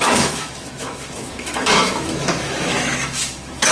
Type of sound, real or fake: fake